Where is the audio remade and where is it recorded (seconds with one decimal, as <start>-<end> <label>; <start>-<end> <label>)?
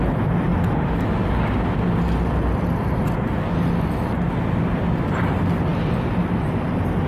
0.0-7.1 recorded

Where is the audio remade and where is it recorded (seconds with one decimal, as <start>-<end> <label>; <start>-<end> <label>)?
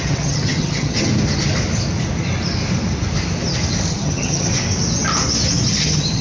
0.0-1.1 remade; 1.1-3.9 recorded; 3.9-4.5 remade; 4.5-5.7 recorded; 5.7-6.2 remade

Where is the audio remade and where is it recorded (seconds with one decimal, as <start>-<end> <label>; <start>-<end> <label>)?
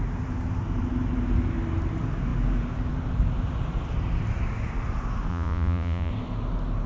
0.0-5.3 recorded; 5.3-6.1 remade; 6.1-6.9 recorded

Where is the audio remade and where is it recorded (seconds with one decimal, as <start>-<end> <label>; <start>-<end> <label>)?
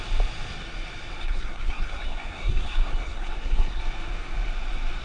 0.0-1.2 recorded; 1.2-3.8 remade; 3.8-5.0 recorded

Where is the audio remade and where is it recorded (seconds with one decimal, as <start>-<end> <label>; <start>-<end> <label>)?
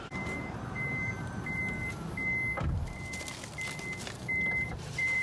0.0-1.6 remade; 1.6-4.7 recorded; 4.7-5.2 remade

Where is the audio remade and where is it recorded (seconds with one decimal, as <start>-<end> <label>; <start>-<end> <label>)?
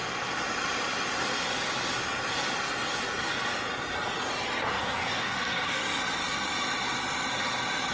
0.0-4.7 recorded; 4.7-5.8 remade; 5.8-7.9 recorded